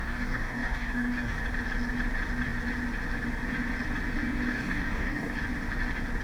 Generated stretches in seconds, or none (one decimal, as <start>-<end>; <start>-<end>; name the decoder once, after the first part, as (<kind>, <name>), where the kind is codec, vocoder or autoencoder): 0.0-1.4 (codec, DAC); 4.5-5.4